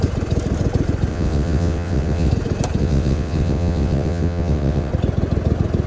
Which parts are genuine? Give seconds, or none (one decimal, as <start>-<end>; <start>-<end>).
0.0-1.1; 2.3-2.8; 4.9-5.9